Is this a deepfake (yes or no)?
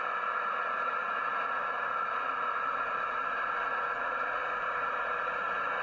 yes